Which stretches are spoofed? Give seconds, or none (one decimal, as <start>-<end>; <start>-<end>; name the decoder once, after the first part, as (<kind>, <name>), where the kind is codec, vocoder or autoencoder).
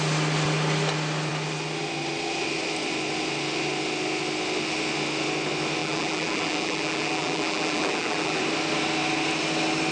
5.8-8.4 (vocoder, BigVGAN v2)